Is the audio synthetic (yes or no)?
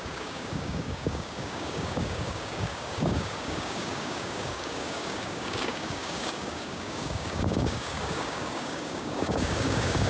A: yes